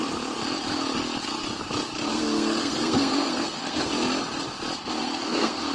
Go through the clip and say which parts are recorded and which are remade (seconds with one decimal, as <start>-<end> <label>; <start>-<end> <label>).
0.0-2.1 recorded; 2.1-3.9 remade; 3.9-5.0 recorded; 5.0-5.7 remade